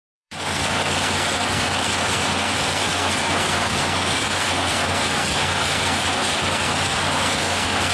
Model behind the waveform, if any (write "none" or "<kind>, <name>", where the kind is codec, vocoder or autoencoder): codec, SNAC